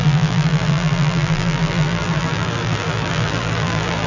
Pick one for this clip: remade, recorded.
remade